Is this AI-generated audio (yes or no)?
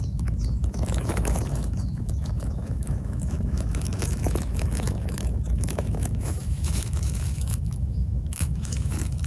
yes